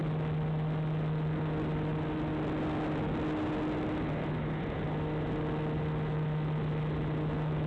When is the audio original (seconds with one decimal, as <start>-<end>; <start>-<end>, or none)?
0.0-7.7